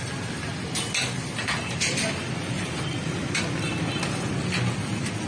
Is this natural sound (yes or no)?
yes